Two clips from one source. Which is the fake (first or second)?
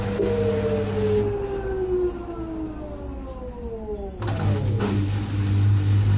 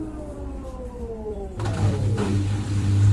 second